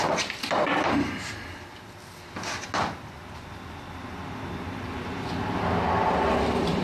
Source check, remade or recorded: recorded